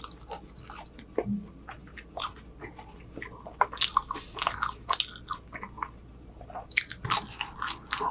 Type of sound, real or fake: real